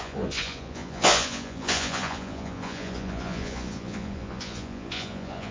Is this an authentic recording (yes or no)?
no